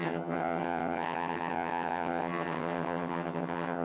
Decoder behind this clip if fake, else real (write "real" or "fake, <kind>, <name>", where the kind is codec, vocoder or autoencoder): fake, vocoder, HiFi-GAN